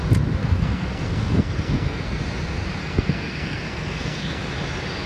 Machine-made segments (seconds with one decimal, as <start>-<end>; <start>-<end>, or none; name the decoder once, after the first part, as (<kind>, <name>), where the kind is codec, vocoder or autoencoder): 0.4-2.2 (codec, SNAC); 2.8-4.4